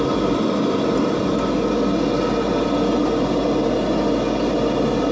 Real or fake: real